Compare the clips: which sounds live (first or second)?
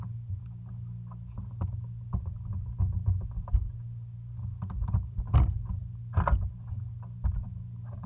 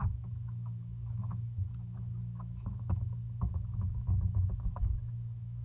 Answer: first